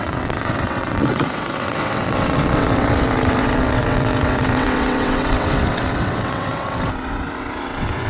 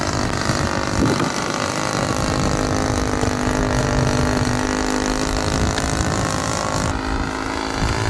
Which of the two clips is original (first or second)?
second